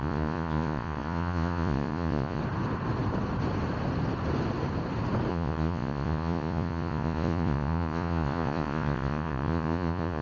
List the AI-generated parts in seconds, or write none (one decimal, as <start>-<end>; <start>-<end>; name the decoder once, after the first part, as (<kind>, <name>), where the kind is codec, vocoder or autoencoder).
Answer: 0.0-2.4 (vocoder, Vocos); 5.3-10.2